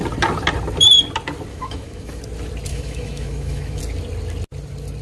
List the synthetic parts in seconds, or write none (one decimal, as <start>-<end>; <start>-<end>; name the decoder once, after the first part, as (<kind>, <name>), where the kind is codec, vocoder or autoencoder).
1.5-2.2 (autoencoder, DAC-VAE); 2.7-3.8